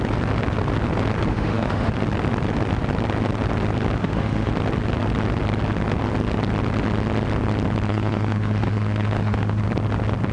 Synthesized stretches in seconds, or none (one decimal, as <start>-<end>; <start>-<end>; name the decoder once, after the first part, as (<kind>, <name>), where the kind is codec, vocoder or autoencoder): 1.3-1.9 (autoencoder, DAC-VAE); 4.0-4.5; 7.9-9.6